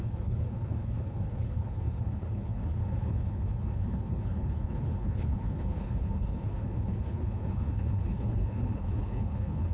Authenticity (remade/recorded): remade